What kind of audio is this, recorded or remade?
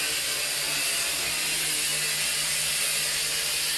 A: recorded